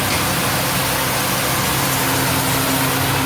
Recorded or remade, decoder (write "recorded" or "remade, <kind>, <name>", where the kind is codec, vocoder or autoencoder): recorded